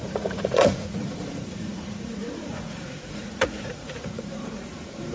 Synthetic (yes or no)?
yes